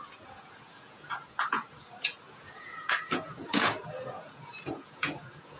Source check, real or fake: fake